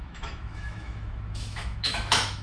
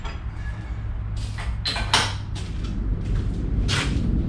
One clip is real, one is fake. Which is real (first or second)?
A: second